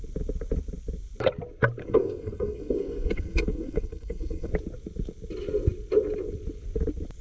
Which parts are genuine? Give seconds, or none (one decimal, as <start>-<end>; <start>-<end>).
0.0-1.8; 4.5-7.2